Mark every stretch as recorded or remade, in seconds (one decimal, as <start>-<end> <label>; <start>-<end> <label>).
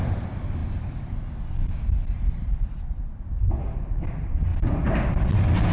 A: 0.0-5.7 recorded